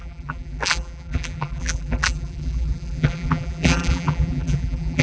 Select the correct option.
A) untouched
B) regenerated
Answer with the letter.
B